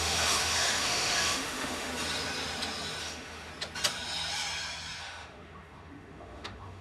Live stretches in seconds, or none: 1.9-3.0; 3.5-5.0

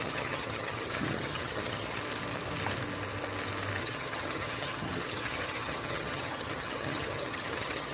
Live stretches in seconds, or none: 2.0-3.8

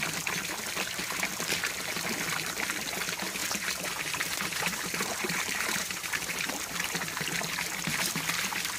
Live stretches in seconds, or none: 0.0-3.4; 6.5-8.8